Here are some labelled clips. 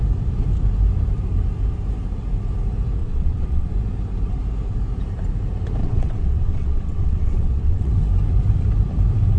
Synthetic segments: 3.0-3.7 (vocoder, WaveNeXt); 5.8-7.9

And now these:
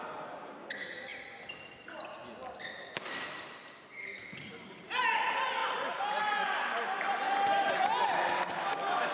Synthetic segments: none

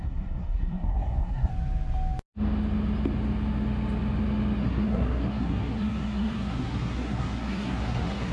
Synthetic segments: 0.0-1.5 (codec, SNAC); 4.6-8.3

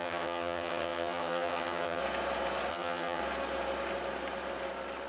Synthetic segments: 0.0-2.0 (vocoder, HiFi-GAN); 2.7-3.2

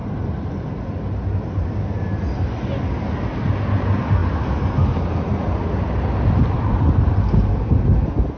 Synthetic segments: none

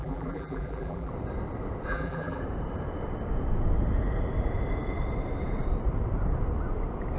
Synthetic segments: 0.0-1.1 (vocoder, BigVGAN v2); 1.9-2.4

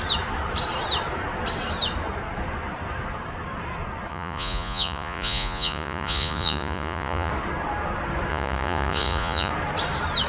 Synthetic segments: 4.1-7.3 (vocoder, Vocos); 8.3-9.5

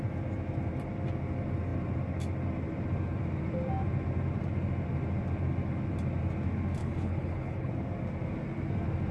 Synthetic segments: 6.8-7.7 (codec, HILCodec)